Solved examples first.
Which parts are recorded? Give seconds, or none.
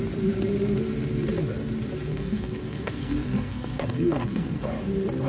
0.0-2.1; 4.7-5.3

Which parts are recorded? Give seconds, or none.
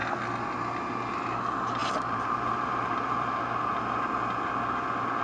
0.0-1.8; 3.4-5.2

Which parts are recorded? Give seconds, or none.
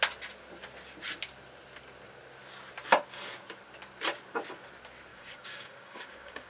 0.0-5.1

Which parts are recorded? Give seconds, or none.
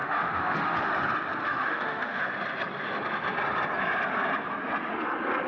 0.9-1.4; 2.2-5.5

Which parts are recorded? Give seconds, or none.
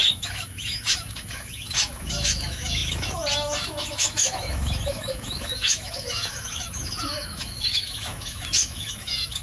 none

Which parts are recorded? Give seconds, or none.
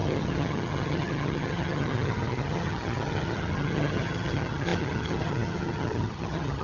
none